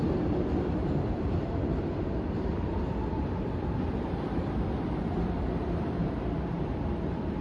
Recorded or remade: remade